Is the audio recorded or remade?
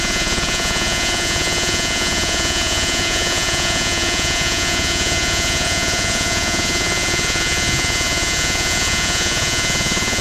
remade